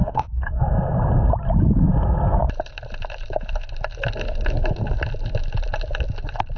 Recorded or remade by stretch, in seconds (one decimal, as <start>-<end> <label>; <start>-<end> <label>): 0.0-0.6 remade; 0.6-6.6 recorded